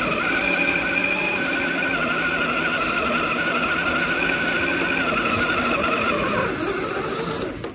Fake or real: real